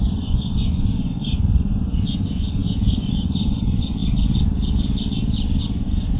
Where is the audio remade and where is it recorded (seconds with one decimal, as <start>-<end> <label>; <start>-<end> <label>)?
0.0-4.0 remade; 4.0-5.6 recorded; 5.6-6.2 remade